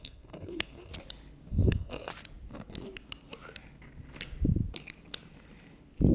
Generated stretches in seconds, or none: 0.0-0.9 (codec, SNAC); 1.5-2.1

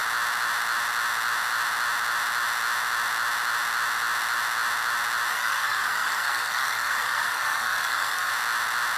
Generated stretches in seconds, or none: 5.3-8.3 (codec, SNAC)